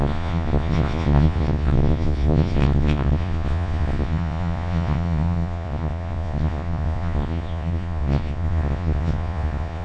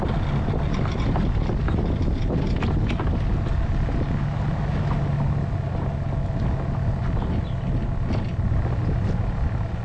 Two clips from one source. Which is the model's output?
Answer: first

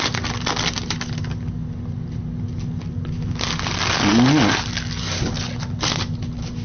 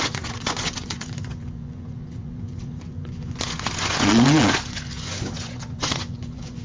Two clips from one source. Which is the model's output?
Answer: second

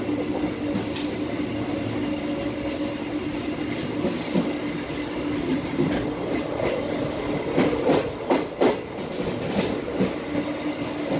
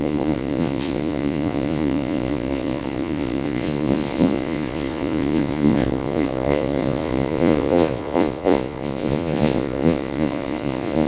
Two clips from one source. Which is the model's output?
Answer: second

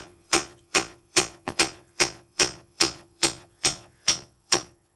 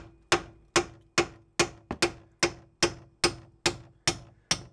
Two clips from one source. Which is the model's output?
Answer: first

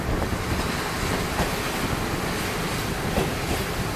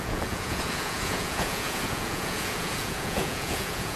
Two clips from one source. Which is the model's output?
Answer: second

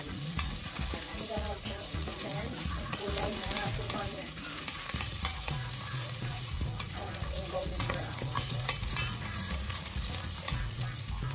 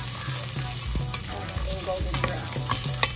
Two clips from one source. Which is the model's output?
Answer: first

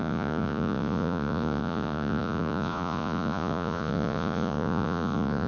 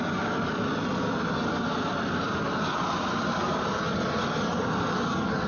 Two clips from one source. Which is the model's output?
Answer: first